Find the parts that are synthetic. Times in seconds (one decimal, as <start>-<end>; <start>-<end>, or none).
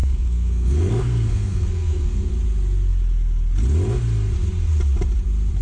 0.0-2.3